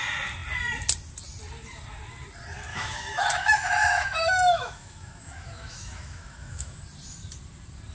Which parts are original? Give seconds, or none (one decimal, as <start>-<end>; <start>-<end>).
0.0-2.7; 6.8-7.9